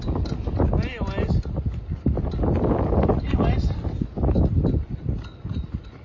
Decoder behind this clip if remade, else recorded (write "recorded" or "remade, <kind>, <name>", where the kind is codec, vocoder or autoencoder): recorded